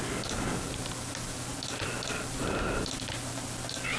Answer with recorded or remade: recorded